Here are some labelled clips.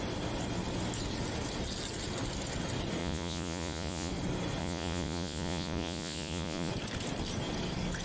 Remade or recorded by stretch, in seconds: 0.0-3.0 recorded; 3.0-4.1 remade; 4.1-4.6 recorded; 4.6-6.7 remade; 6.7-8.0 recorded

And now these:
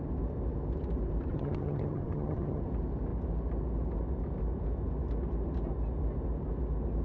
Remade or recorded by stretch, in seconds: 0.0-1.3 recorded; 1.3-2.6 remade; 2.6-7.0 recorded

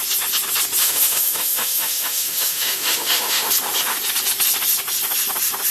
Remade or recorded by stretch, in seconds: 0.0-0.8 recorded; 0.8-3.5 remade; 3.5-5.7 recorded

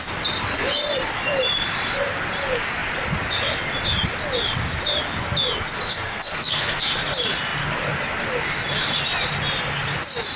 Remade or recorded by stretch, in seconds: 0.0-5.9 recorded; 5.9-6.9 remade; 6.9-10.4 recorded

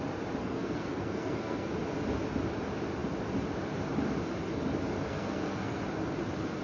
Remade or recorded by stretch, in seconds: 0.0-0.4 recorded; 0.4-1.7 remade; 1.7-5.1 recorded; 5.1-5.8 remade; 5.8-6.6 recorded

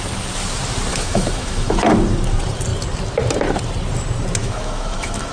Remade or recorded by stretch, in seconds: 0.0-0.9 recorded; 0.9-1.8 remade; 1.8-4.4 recorded; 4.4-5.3 remade

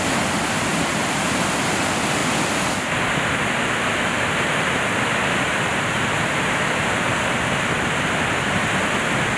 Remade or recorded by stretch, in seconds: 0.0-0.7 recorded; 0.7-1.5 remade; 1.5-5.2 recorded; 5.2-7.5 remade; 7.5-9.4 recorded

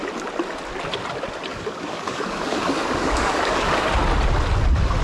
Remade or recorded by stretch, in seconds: 0.0-1.5 recorded; 1.5-3.9 remade; 3.9-5.0 recorded